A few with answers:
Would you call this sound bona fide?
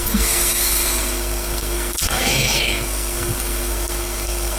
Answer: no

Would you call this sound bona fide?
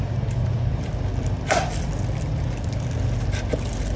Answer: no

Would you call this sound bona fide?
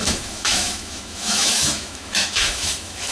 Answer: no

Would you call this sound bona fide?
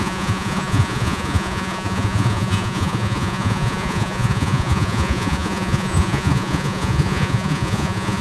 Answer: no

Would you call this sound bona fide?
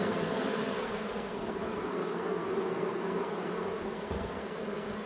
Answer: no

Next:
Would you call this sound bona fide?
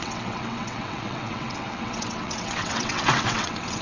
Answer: no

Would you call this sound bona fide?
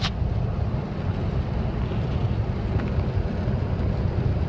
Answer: yes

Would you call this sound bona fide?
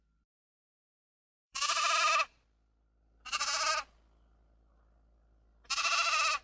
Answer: no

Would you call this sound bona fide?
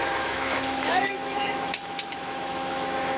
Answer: no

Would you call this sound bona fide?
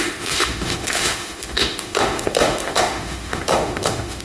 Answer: no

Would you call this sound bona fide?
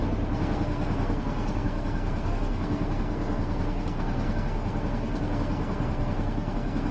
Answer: no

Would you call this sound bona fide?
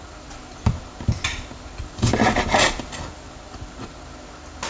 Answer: yes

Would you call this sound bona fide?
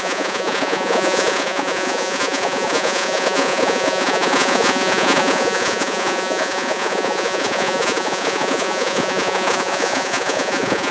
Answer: no